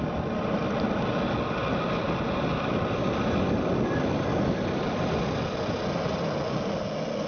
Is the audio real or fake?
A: real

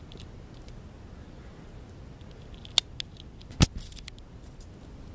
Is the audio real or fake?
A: real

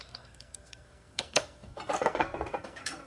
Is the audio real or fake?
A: fake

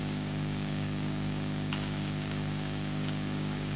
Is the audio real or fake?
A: fake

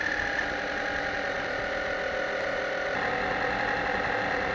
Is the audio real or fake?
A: real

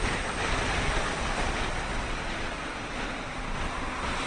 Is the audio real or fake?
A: real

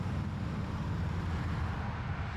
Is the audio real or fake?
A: real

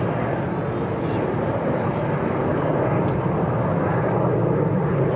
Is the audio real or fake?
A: real